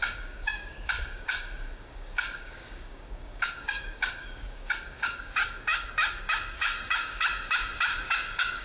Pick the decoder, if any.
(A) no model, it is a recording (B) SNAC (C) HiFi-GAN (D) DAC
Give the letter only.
D